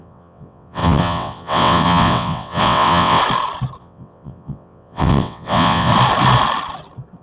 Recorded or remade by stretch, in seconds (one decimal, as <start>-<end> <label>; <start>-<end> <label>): 0.0-3.2 remade; 3.2-3.8 recorded; 3.8-5.9 remade; 5.9-7.2 recorded